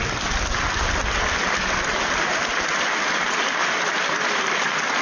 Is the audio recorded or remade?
recorded